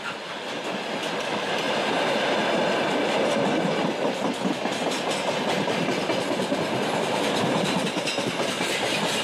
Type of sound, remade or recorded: recorded